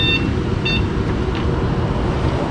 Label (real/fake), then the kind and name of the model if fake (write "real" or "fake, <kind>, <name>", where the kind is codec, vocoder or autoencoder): real